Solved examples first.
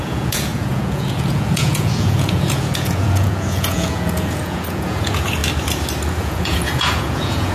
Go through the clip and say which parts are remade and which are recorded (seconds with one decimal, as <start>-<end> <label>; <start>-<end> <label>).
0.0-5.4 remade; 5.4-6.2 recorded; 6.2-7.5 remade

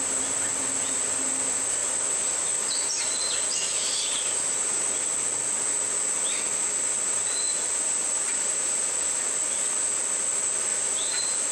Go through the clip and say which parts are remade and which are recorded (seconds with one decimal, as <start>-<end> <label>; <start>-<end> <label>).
0.0-1.8 recorded; 1.8-4.9 remade; 4.9-7.5 recorded; 7.5-9.2 remade; 9.2-10.7 recorded; 10.7-11.5 remade

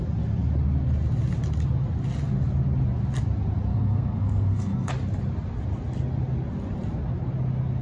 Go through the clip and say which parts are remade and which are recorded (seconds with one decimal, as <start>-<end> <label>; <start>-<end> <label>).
0.0-3.7 recorded; 3.7-4.9 remade; 4.9-7.8 recorded